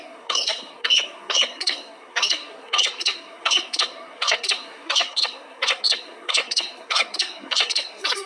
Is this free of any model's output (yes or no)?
no